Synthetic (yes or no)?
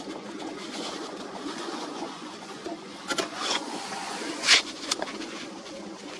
yes